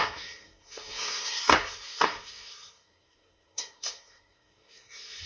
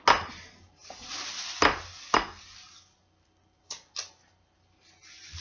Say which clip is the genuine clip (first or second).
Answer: second